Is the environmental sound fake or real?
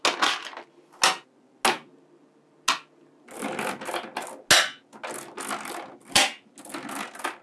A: real